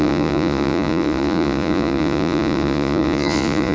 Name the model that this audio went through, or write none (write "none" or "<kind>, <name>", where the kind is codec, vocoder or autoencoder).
vocoder, Vocos